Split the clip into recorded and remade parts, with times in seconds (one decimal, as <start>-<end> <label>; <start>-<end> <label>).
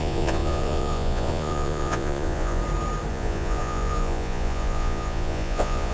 0.0-2.6 remade; 2.6-3.1 recorded; 3.1-5.9 remade